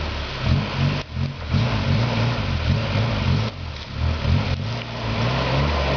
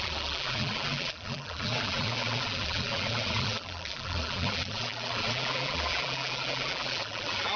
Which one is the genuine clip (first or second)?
first